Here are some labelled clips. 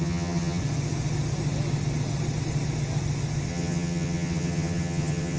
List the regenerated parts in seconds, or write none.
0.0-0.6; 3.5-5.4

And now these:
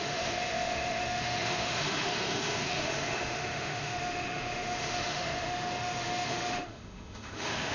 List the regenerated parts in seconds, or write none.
0.0-7.7